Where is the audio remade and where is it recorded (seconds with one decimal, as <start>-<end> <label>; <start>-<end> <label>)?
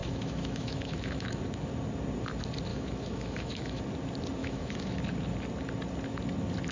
0.0-1.4 remade; 1.4-2.7 recorded; 2.7-3.8 remade; 3.8-4.4 recorded; 4.4-5.0 remade; 5.0-6.7 recorded